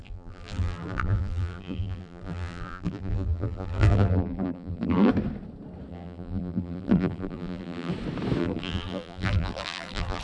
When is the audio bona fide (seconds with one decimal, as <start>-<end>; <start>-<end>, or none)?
5.1-5.9; 7.9-8.4